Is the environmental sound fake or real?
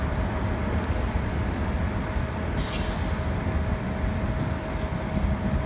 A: real